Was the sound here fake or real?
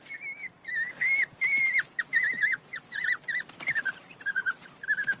fake